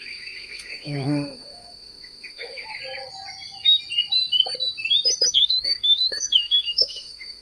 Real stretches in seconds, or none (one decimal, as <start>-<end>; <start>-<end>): 2.8-5.3